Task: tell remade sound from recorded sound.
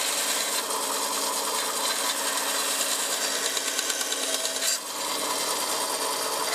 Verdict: recorded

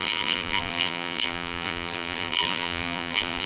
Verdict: remade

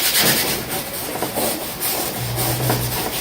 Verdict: remade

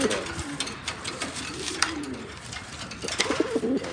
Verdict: remade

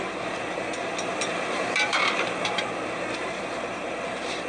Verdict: remade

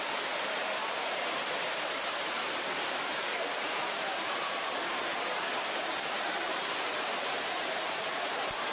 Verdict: remade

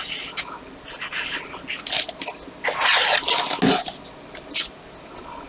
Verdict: recorded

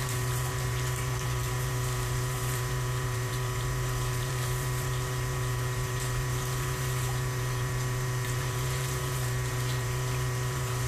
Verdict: remade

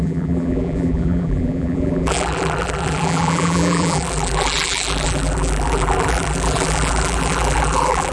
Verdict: remade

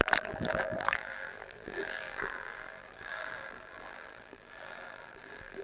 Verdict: remade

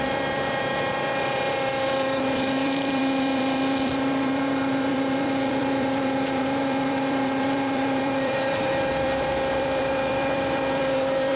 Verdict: remade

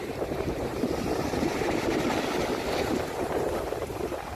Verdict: remade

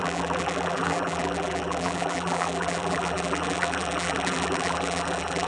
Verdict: remade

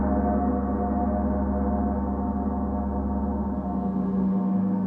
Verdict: recorded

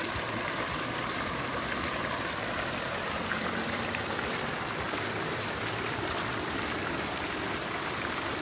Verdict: remade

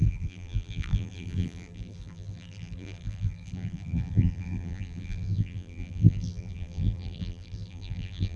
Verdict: remade